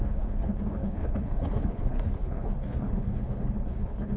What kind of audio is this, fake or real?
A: fake